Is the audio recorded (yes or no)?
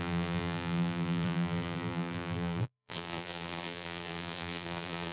no